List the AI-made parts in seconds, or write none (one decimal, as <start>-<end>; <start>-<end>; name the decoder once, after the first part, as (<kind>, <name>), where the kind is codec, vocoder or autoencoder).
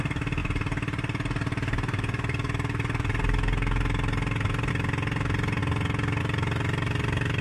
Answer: 0.4-4.7 (vocoder, BigVGAN v2)